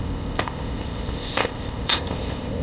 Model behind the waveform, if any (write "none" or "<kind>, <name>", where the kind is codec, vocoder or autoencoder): codec, ZipCodec